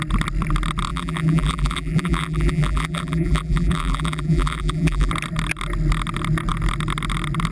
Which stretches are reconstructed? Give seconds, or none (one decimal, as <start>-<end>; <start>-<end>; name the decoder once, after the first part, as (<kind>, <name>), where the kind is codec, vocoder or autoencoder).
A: 0.9-5.1 (vocoder, BigVGAN v2)